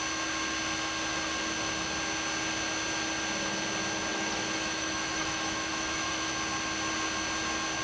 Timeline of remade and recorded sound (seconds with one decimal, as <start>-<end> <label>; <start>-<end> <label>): 0.0-4.1 recorded; 4.1-6.3 remade; 6.3-7.8 recorded